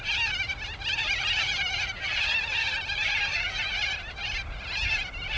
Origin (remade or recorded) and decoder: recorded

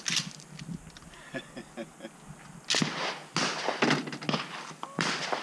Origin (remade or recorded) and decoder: recorded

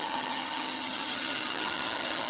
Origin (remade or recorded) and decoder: remade, vocoder, HiFi-GAN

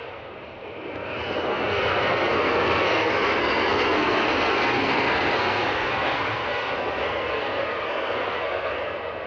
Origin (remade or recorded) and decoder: remade, codec, SNAC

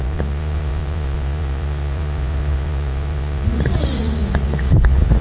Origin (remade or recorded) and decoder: remade, vocoder, Vocos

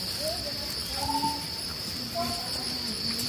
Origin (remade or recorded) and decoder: recorded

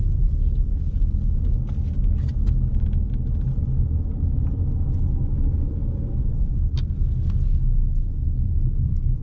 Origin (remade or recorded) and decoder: recorded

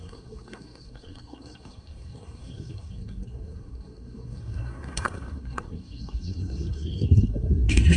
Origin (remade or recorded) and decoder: remade, codec, SNAC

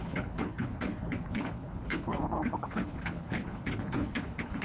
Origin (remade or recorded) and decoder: remade, codec, HILCodec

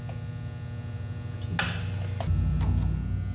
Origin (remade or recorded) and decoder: recorded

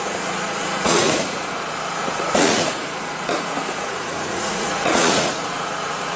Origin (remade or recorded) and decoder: remade, vocoder, Vocos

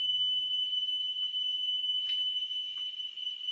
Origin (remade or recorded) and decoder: recorded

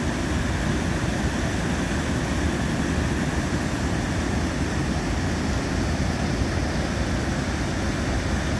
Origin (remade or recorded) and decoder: recorded